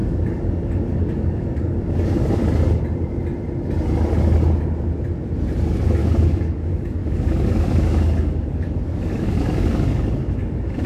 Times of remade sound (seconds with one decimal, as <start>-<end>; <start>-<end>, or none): 0.0-2.4; 6.0-10.9

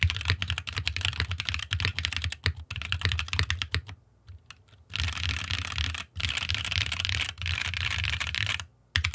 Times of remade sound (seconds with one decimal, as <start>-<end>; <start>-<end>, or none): none

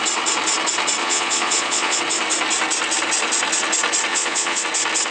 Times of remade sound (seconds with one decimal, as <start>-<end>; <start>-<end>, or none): 1.0-2.0; 4.1-4.6

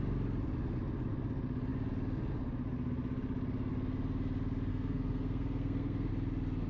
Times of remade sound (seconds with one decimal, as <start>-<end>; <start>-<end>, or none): 4.7-6.1

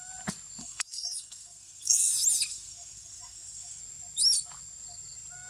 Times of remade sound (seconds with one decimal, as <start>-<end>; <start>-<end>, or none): 0.6-2.1; 2.5-3.8

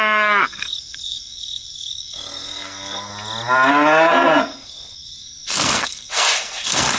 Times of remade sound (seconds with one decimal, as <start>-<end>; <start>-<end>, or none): 0.0-3.1; 3.7-7.0

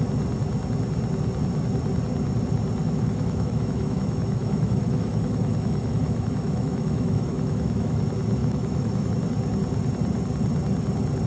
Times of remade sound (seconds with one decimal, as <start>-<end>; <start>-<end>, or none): 2.8-8.0; 8.4-9.1